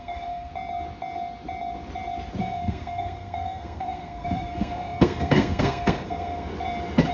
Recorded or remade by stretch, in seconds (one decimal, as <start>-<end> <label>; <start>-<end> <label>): 0.0-0.5 remade; 0.5-2.4 recorded; 2.4-6.5 remade; 6.5-7.1 recorded